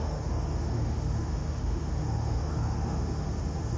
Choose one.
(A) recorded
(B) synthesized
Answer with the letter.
B